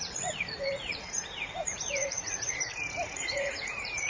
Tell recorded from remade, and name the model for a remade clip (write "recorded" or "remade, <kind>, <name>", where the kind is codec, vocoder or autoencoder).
remade, vocoder, Vocos